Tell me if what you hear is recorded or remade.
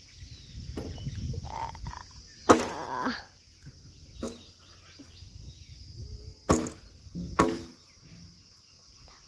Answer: recorded